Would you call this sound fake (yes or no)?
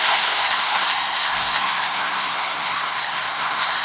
yes